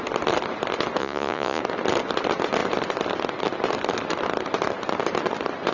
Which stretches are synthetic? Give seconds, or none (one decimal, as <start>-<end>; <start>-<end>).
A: 1.0-1.6